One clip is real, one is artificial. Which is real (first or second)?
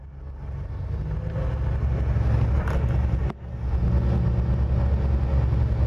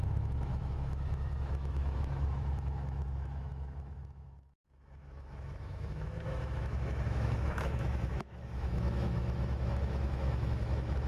first